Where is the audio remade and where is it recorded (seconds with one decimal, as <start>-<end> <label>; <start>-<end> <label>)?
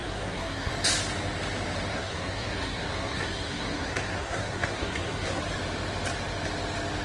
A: 0.0-0.7 remade; 0.7-1.9 recorded; 1.9-5.4 remade; 5.4-7.0 recorded